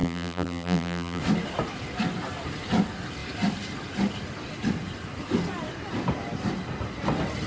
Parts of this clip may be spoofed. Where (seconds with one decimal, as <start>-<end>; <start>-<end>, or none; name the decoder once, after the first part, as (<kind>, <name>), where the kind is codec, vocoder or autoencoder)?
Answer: 0.0-1.2 (vocoder, BigVGAN v2)